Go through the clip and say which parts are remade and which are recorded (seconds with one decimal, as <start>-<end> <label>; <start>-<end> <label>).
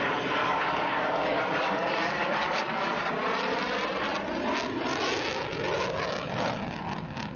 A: 0.0-0.4 recorded; 0.4-3.1 remade; 3.1-7.4 recorded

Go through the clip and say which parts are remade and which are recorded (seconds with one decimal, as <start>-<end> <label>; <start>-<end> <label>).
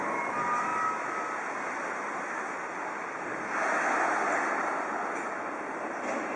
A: 0.0-6.4 recorded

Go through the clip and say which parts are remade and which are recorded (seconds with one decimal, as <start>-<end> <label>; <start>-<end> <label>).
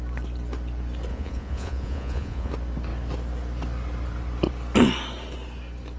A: 0.0-1.1 recorded; 1.1-2.5 remade; 2.5-6.0 recorded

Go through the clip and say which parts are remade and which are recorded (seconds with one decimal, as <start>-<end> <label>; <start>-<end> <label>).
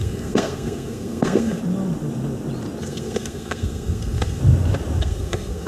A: 0.0-1.6 remade; 1.6-2.8 recorded; 2.8-4.4 remade; 4.4-5.0 recorded; 5.0-5.7 remade